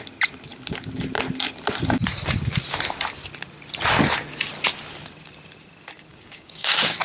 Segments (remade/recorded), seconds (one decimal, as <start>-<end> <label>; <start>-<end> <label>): 0.0-6.1 recorded; 6.1-7.0 remade